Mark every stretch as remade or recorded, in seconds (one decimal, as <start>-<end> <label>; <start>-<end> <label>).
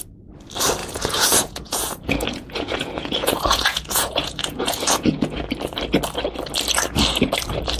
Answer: 0.0-0.8 recorded; 0.8-5.5 remade; 5.5-7.8 recorded